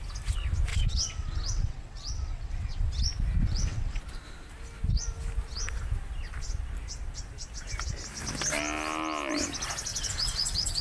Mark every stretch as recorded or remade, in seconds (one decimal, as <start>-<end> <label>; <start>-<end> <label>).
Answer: 0.0-0.7 recorded; 0.7-2.9 remade; 2.9-3.4 recorded; 3.4-4.0 remade; 4.0-9.9 recorded; 9.9-10.8 remade